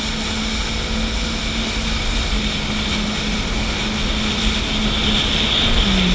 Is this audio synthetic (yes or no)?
no